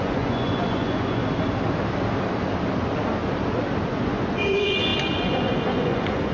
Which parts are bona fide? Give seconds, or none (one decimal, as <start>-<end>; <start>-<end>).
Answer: 1.2-3.9